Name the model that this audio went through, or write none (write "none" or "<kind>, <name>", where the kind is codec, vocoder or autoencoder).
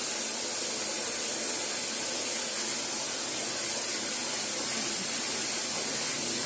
none